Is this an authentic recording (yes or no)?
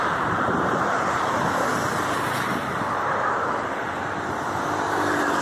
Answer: no